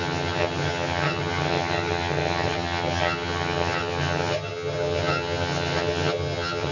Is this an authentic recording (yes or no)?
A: no